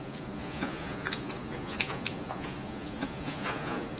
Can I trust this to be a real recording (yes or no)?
no